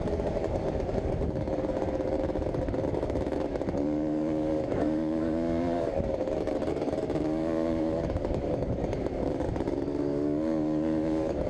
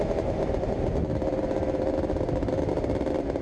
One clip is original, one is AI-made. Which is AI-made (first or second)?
first